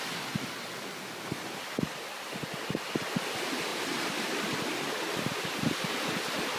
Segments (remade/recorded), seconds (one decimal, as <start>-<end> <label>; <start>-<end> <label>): 0.0-3.7 recorded; 3.7-4.5 remade; 4.5-6.6 recorded